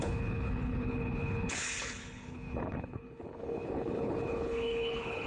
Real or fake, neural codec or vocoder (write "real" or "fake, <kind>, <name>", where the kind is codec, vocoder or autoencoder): fake, codec, HILCodec